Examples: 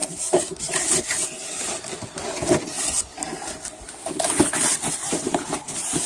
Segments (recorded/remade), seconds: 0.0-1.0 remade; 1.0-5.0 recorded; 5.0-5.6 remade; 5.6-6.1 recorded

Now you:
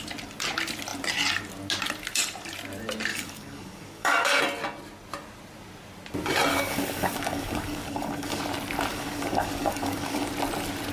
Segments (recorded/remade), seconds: 0.0-3.1 recorded; 3.1-4.4 remade; 4.4-6.5 recorded; 6.5-8.4 remade; 8.4-8.9 recorded; 8.9-10.3 remade; 10.3-10.9 recorded

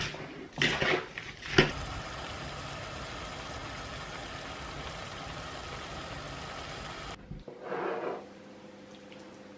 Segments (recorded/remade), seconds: 0.0-9.6 recorded

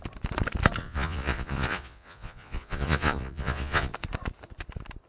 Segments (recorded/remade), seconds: 0.0-0.8 recorded; 0.8-3.9 remade; 3.9-5.1 recorded

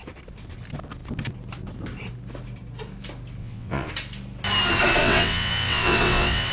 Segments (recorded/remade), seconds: 0.0-3.4 recorded; 3.4-3.9 remade; 3.9-5.0 recorded; 5.0-6.5 remade

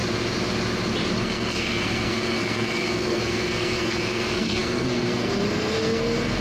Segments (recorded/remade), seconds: 0.0-1.2 recorded; 1.2-6.4 remade

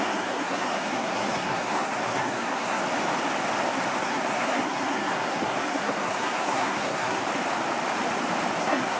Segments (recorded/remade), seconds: 0.0-2.8 remade; 2.8-4.0 recorded; 4.0-7.2 remade; 7.2-8.6 recorded; 8.6-9.0 remade

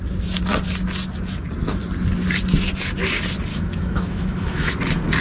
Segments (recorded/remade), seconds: 0.0-3.5 recorded; 3.5-4.7 remade; 4.7-5.2 recorded